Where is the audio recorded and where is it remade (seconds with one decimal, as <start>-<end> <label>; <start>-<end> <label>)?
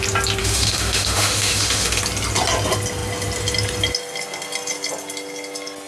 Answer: 0.0-0.4 recorded; 0.4-2.0 remade; 2.0-5.9 recorded